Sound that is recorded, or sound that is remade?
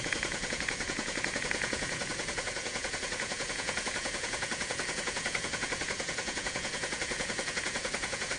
remade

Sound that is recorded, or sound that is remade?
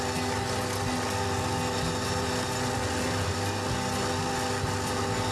recorded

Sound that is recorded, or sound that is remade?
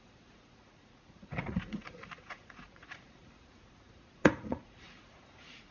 remade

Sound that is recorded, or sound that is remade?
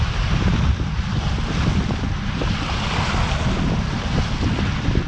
recorded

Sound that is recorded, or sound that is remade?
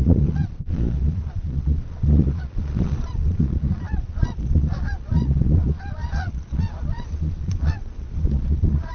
remade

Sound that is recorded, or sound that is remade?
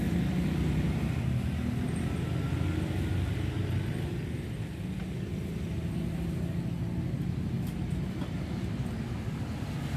recorded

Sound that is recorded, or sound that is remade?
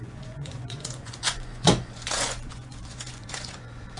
remade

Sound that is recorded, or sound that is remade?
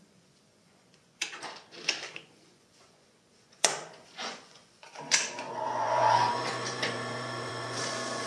remade